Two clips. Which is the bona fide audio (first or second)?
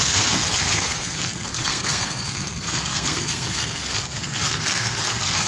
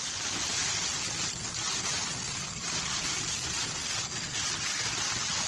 second